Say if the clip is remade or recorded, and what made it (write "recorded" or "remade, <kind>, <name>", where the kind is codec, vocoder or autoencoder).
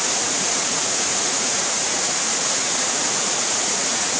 remade, vocoder, Vocos